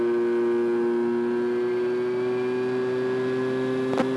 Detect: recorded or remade recorded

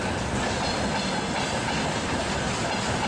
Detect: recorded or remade remade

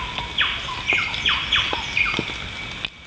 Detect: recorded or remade recorded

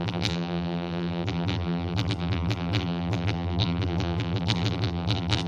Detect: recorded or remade remade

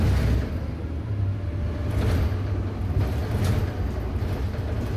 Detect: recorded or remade recorded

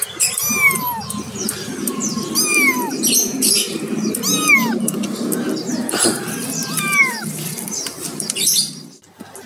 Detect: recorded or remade recorded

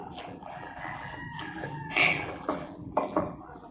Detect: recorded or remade remade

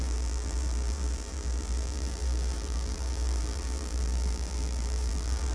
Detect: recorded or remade remade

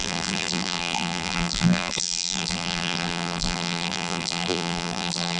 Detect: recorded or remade remade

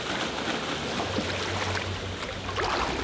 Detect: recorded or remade recorded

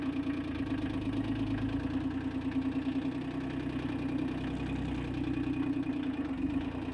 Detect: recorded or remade recorded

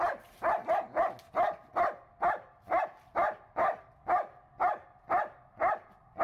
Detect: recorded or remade recorded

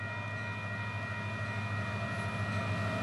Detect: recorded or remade recorded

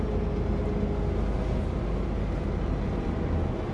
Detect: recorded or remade recorded